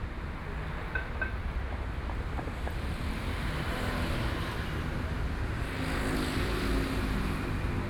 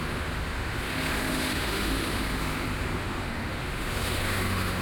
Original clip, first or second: first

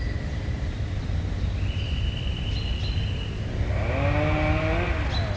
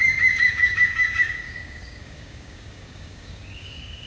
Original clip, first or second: first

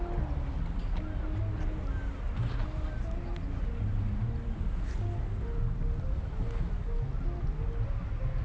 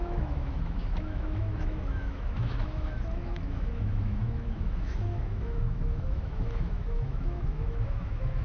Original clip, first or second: first